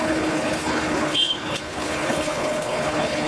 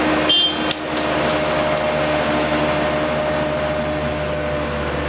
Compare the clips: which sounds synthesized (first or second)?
first